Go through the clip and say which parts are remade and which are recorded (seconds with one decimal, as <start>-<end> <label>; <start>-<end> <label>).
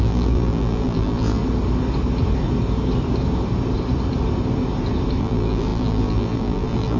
0.0-1.4 remade; 1.4-5.2 recorded; 5.2-7.0 remade